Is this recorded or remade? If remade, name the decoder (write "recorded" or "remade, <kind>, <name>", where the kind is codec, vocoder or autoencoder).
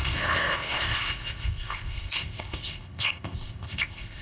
remade, codec, ZipCodec